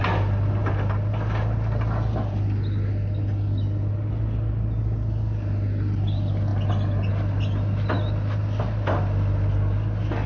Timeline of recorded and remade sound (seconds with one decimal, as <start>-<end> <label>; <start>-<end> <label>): 0.0-10.3 recorded